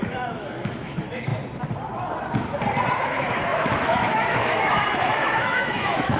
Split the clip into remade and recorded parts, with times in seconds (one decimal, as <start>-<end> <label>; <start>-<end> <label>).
0.0-1.3 remade; 1.3-2.9 recorded; 2.9-6.2 remade